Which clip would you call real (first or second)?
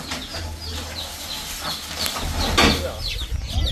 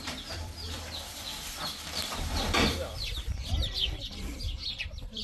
first